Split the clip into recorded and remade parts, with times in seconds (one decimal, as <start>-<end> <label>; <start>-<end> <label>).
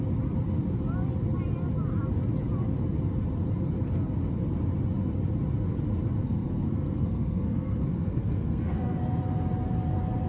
0.0-6.2 recorded; 6.2-9.0 remade; 9.0-10.3 recorded